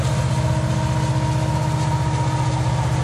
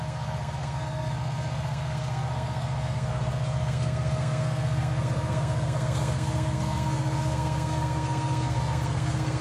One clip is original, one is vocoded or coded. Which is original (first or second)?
first